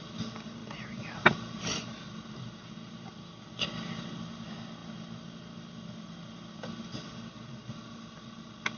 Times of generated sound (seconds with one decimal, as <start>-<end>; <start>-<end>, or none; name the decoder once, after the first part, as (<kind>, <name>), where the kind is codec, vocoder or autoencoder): none